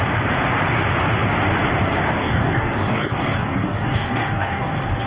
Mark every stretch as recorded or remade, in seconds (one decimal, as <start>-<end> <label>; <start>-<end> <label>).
0.0-2.2 recorded; 2.2-4.6 remade; 4.6-5.1 recorded